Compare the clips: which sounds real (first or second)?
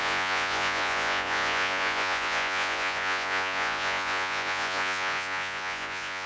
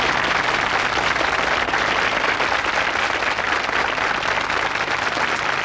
second